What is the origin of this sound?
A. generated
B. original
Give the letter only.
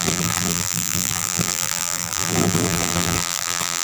A